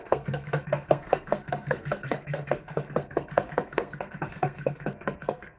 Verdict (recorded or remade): remade